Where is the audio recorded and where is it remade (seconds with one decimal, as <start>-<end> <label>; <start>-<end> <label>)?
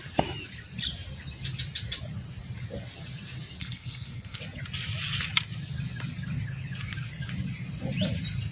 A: 0.0-3.6 recorded; 3.6-4.4 remade; 4.4-8.5 recorded